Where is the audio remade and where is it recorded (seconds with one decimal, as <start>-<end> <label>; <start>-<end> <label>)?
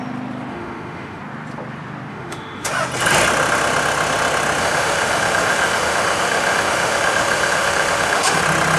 0.0-0.5 recorded; 0.5-1.2 remade; 1.2-2.1 recorded; 2.1-2.7 remade; 2.7-4.6 recorded; 4.6-8.4 remade; 8.4-8.8 recorded